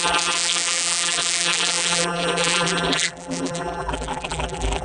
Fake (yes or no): yes